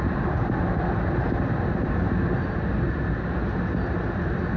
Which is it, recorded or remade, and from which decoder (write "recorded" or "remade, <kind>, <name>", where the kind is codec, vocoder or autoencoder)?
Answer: recorded